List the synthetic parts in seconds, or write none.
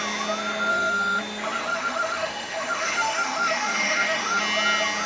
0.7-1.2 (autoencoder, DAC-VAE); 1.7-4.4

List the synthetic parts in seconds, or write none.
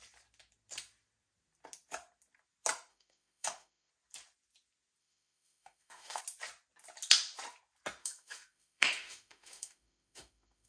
2.9-3.9 (autoencoder, DAC-VAE); 5.0-6.2; 8.0-10.7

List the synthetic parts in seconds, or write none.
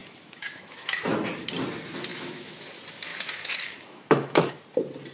0.0-1.1 (autoencoder, DAC-VAE); 2.1-2.6; 3.1-4.5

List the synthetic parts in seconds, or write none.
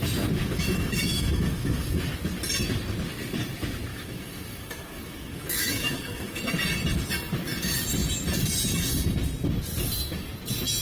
0.4-2.0 (autoencoder, DAC-VAE); 3.9-6.4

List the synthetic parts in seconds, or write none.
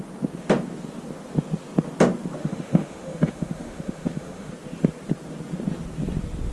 2.4-4.5 (autoencoder, DAC-VAE)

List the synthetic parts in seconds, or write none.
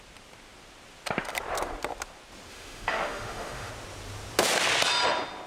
2.5-3.7 (autoencoder, DAC-VAE)